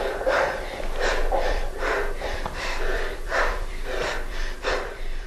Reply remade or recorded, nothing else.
remade